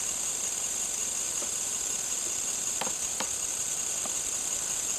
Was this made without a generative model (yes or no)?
yes